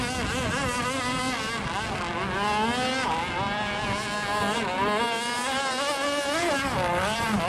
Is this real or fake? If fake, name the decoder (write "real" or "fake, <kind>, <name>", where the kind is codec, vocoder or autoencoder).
real